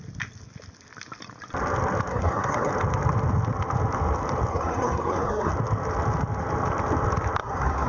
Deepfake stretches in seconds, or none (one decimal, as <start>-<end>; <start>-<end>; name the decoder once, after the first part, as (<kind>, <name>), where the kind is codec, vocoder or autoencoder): 2.1-2.7 (codec, SNAC); 4.5-5.5; 7.4-7.9